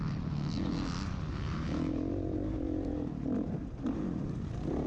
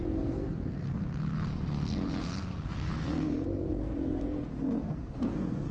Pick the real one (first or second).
first